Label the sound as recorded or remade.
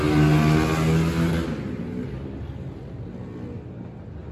recorded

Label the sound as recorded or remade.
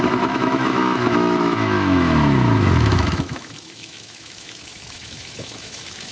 remade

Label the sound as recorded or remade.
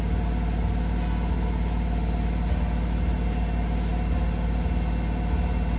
recorded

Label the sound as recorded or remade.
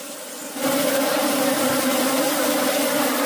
recorded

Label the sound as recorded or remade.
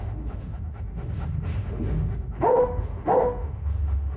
remade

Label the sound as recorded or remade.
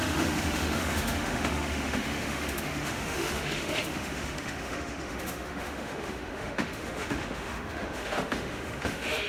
remade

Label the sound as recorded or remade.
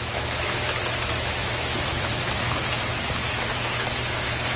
remade